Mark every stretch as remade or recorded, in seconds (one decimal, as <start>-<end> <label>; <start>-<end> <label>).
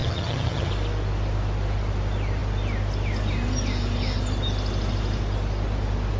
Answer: 0.0-0.7 remade; 0.7-6.2 recorded